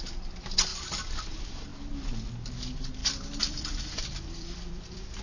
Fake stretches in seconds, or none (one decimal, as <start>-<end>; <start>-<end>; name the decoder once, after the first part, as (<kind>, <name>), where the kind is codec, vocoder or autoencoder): 0.7-1.2 (vocoder, BigVGAN v2); 3.0-5.2